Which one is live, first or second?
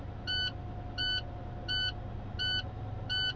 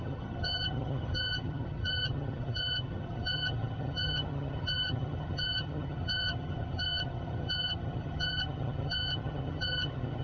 first